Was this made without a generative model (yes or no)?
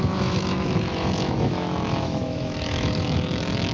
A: no